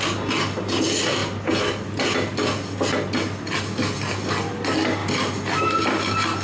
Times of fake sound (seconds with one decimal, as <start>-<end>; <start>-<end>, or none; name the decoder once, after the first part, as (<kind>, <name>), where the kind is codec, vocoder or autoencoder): none